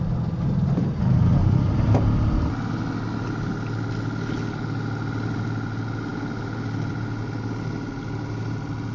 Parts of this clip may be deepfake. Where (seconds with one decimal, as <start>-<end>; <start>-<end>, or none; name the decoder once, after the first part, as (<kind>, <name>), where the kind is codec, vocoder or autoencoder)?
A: none